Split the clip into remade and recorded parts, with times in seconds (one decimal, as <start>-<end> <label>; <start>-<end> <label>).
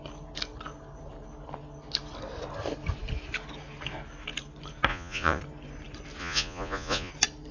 0.0-4.9 recorded; 4.9-5.4 remade; 5.4-6.2 recorded; 6.2-7.1 remade; 7.1-7.5 recorded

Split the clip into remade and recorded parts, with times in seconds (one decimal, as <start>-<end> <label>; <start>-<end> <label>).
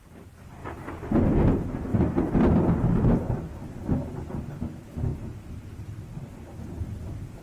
0.0-7.4 recorded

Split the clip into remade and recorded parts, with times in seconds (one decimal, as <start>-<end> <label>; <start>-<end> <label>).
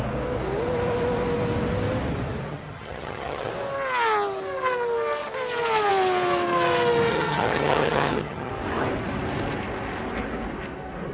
0.0-2.5 recorded; 2.5-3.5 remade; 3.5-7.1 recorded; 7.1-8.5 remade; 8.5-11.1 recorded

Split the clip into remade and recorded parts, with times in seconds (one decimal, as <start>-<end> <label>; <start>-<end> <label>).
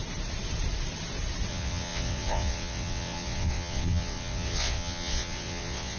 0.0-1.5 recorded; 1.5-6.0 remade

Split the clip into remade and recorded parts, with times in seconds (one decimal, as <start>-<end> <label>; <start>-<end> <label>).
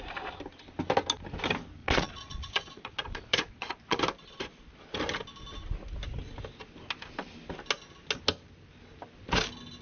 0.0-1.8 recorded; 1.8-4.0 remade; 4.0-9.8 recorded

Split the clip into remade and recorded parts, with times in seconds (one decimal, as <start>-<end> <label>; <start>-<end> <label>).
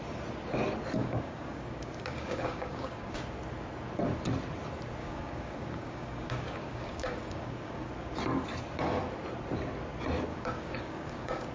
0.0-1.0 recorded; 1.0-3.2 remade; 3.2-5.0 recorded; 5.0-7.9 remade; 7.9-10.3 recorded; 10.3-11.5 remade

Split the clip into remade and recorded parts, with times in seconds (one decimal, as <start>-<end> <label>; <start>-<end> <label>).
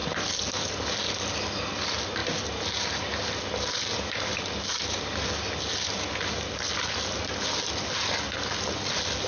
0.0-9.3 recorded